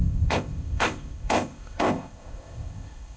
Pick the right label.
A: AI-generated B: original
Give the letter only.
A